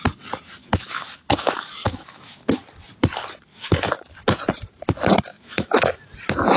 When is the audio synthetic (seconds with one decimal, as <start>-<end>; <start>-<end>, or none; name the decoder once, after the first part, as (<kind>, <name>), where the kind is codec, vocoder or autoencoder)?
0.6-2.6 (autoencoder, DAC-VAE); 3.5-4.1; 5.3-5.9